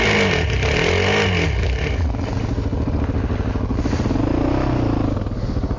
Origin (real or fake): real